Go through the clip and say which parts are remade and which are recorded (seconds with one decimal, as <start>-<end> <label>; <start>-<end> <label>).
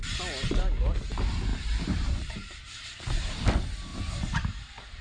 0.0-1.5 recorded; 1.5-3.4 remade; 3.4-3.9 recorded; 3.9-5.0 remade